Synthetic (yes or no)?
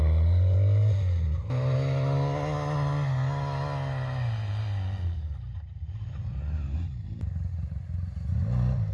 no